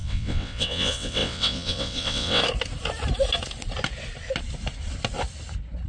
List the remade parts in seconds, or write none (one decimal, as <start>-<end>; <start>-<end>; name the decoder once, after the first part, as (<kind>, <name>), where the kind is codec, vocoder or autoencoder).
0.0-2.4 (vocoder, WaveNeXt)